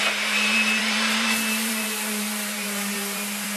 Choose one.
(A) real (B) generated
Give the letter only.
B